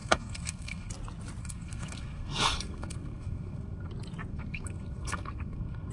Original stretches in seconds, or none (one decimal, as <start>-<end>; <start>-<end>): 0.9-1.4; 3.9-4.3